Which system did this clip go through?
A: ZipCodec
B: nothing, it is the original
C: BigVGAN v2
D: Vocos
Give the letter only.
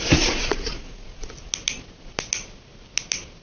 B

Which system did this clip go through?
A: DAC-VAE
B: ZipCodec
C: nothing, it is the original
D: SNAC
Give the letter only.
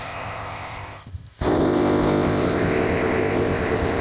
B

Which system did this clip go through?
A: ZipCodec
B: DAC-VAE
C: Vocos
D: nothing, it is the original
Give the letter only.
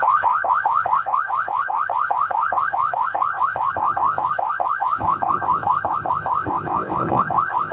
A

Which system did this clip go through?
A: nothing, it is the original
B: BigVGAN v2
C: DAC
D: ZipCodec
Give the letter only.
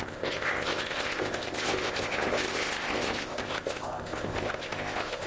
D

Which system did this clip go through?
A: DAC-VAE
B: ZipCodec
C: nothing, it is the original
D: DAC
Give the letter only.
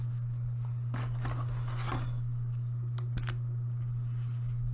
C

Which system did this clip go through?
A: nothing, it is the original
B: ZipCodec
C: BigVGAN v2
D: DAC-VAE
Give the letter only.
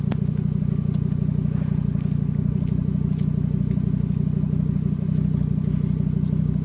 A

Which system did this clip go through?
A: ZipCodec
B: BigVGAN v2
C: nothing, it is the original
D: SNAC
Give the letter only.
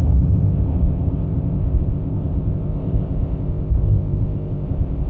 A